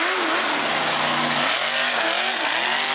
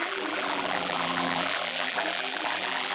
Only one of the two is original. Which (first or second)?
first